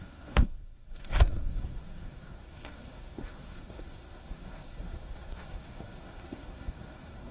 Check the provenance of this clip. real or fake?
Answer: fake